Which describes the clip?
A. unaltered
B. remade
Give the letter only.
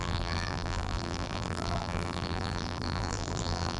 B